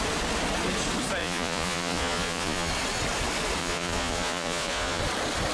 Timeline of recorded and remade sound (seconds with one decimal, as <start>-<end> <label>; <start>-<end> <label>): 0.0-1.2 recorded; 1.2-2.7 remade; 2.7-3.6 recorded; 3.6-5.0 remade; 5.0-5.5 recorded